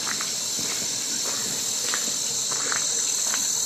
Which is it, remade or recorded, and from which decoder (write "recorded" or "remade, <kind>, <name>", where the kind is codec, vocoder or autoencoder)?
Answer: recorded